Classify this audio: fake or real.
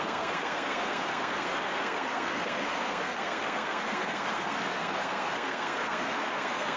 fake